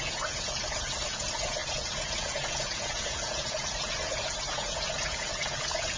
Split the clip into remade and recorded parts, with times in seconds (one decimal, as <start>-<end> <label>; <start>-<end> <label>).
0.0-6.0 remade